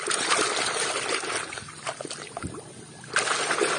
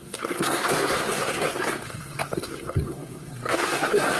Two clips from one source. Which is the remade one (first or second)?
second